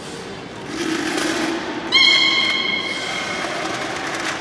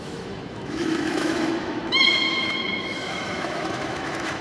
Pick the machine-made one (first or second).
second